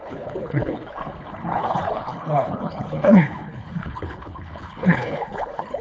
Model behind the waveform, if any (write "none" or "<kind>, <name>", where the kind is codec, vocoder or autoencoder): codec, HILCodec